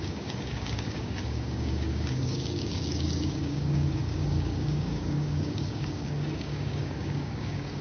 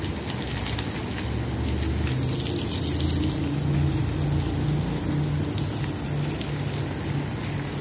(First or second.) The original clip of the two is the second